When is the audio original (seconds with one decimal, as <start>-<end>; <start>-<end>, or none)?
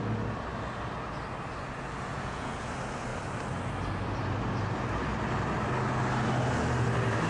0.0-2.1; 2.7-7.3